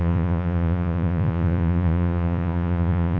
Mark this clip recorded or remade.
remade